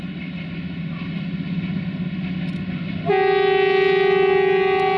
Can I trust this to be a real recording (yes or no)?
yes